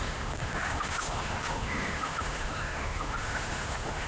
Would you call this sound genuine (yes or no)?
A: no